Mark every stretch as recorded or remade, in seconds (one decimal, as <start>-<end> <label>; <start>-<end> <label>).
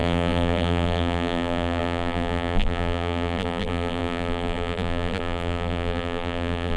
0.0-6.8 remade